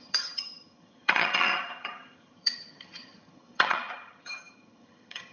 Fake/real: fake